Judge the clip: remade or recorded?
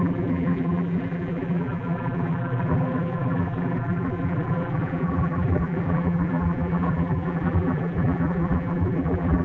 remade